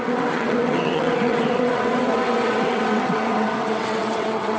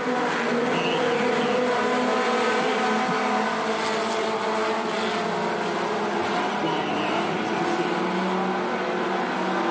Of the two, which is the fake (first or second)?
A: first